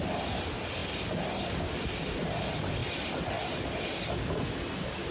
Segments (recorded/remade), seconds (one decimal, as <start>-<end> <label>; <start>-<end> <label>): 0.0-5.1 recorded